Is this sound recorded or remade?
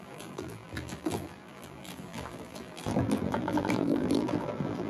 remade